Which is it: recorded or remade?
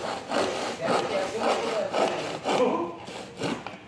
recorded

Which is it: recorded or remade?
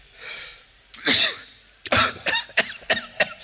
recorded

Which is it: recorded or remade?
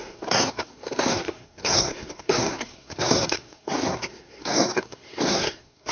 remade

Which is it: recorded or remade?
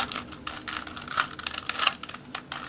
recorded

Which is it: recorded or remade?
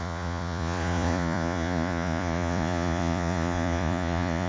remade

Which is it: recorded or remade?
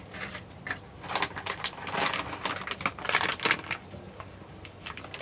recorded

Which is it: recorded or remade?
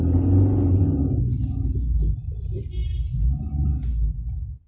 recorded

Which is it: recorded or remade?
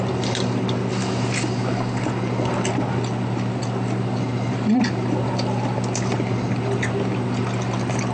recorded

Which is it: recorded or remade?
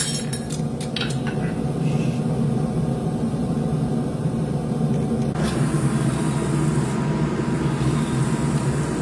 recorded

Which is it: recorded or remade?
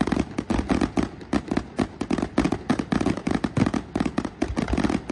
recorded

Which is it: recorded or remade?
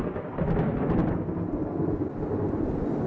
recorded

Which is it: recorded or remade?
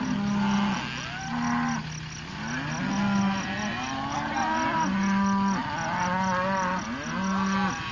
recorded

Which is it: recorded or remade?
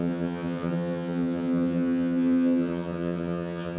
remade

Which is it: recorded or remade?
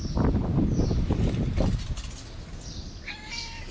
recorded